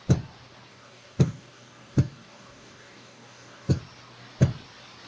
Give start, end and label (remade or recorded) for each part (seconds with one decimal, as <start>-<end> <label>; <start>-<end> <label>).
0.0-0.7 recorded; 0.7-3.8 remade; 3.8-5.1 recorded